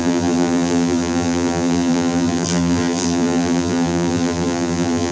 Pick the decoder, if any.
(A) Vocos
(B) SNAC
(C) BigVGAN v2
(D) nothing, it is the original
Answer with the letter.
C